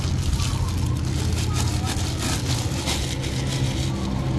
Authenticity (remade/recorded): recorded